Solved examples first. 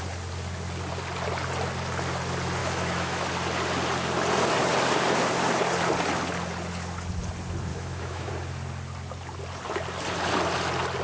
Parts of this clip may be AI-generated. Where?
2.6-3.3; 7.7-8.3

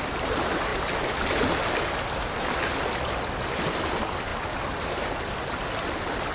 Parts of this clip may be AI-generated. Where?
none